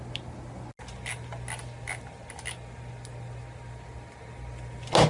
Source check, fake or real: real